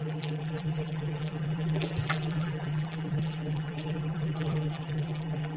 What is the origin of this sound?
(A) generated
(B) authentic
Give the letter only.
A